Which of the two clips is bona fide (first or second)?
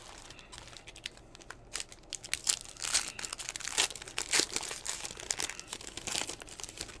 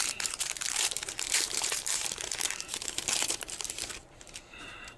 first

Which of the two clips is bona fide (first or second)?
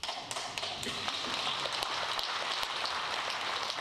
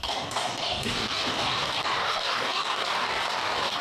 first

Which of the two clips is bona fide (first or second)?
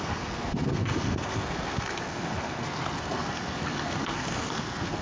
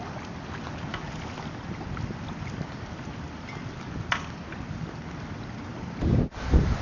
second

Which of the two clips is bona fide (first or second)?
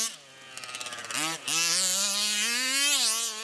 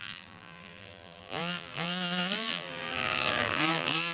first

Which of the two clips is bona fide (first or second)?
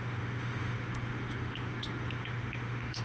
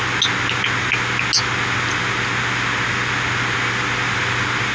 second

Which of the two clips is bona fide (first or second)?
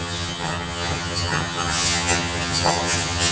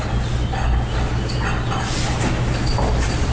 second